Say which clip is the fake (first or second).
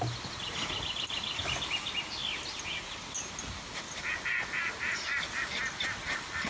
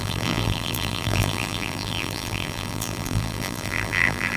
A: second